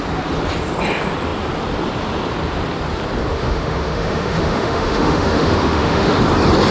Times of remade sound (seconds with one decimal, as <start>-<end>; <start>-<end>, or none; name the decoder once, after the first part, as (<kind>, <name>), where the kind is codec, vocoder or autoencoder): 3.3-6.2 (autoencoder, DAC-VAE)